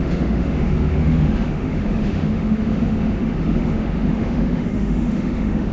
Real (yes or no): no